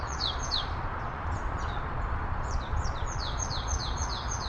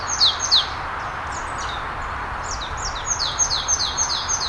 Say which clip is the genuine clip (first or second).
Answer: second